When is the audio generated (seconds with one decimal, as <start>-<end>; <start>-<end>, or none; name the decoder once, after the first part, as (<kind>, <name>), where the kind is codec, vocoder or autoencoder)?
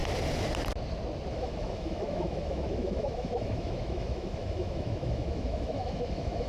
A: 1.3-6.5 (autoencoder, DAC-VAE)